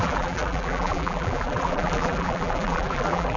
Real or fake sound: fake